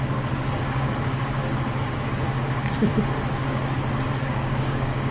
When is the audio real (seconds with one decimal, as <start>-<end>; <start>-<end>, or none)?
1.4-2.4; 2.9-4.2